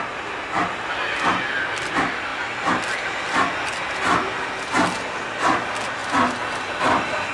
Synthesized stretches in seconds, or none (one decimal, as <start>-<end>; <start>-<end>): none